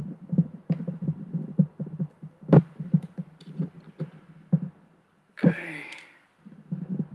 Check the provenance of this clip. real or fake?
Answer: real